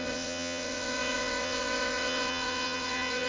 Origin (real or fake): fake